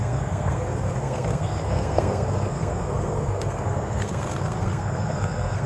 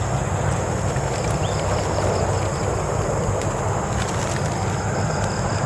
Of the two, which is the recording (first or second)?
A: second